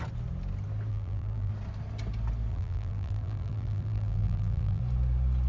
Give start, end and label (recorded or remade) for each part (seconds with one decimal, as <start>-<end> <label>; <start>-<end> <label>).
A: 0.0-0.9 recorded; 0.9-1.5 remade; 1.5-2.5 recorded; 2.5-4.8 remade; 4.8-5.5 recorded

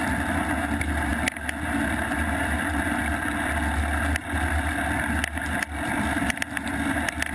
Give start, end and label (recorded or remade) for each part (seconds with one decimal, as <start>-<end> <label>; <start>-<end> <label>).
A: 0.0-7.3 recorded